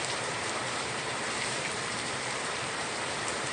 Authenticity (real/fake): fake